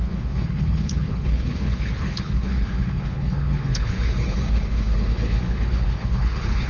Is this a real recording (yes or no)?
no